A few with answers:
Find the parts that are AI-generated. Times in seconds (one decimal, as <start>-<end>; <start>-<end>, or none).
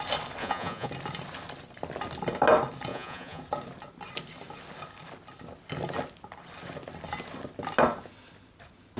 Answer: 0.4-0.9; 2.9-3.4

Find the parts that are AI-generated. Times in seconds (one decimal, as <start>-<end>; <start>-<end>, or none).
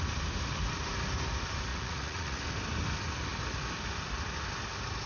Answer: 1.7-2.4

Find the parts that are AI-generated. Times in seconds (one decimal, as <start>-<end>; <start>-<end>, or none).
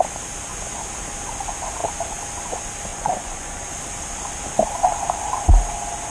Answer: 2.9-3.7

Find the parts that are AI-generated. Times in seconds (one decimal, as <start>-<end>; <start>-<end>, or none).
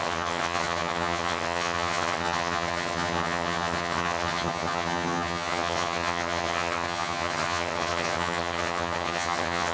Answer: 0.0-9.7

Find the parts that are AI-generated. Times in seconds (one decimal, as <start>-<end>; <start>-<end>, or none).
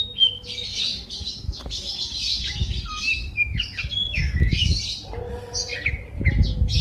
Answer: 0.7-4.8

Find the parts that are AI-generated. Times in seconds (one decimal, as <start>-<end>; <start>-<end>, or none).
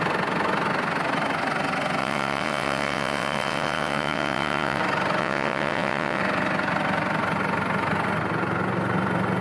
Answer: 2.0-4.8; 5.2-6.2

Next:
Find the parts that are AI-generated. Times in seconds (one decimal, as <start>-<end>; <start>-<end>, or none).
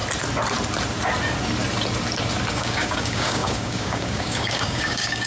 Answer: 2.5-5.3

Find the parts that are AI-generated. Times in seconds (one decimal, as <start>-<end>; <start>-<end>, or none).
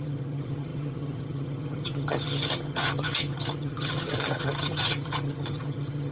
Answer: 0.0-6.1